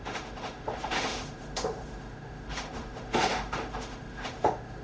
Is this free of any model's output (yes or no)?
no